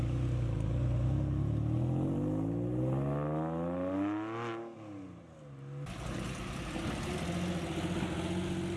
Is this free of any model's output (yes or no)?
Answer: yes